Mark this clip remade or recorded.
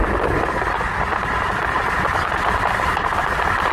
recorded